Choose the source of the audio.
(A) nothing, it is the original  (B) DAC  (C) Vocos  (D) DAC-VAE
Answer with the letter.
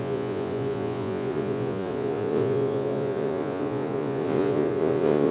C